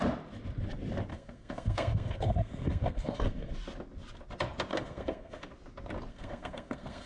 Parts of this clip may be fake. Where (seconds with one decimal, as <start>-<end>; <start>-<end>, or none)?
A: 1.1-3.5; 4.7-5.5; 6.1-7.1